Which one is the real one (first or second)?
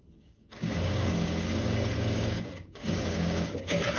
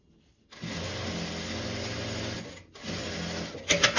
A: second